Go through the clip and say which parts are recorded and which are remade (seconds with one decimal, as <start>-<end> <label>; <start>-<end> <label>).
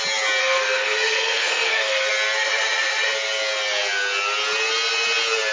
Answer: 0.0-0.4 recorded; 0.4-2.1 remade; 2.1-5.5 recorded